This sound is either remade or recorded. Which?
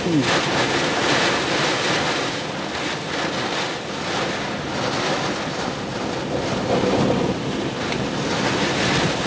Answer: recorded